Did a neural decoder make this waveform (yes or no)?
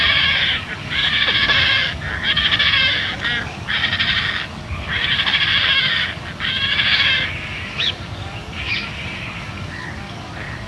yes